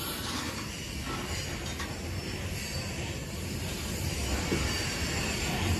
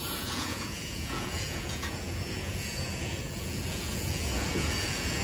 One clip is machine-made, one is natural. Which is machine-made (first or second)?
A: second